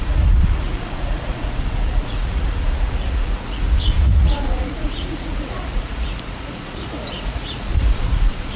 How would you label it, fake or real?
fake